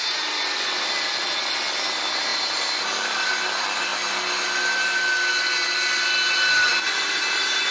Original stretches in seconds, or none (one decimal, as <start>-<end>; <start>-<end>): 0.0-2.3; 3.2-7.7